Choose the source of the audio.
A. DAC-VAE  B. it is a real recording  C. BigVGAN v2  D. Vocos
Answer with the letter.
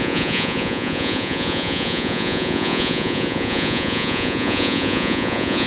D